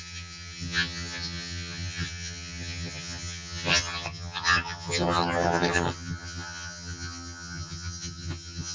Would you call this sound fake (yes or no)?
yes